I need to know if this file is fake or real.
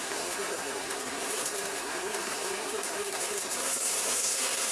fake